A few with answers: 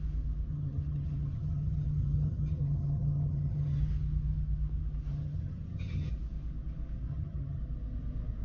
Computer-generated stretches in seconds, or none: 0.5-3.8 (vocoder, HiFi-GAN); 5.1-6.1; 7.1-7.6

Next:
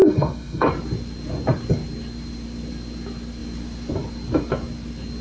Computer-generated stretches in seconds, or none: 0.0-0.7 (autoencoder, DAC-VAE)